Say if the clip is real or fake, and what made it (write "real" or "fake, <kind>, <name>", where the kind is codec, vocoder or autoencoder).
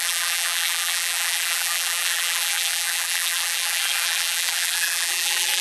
fake, vocoder, BigVGAN v2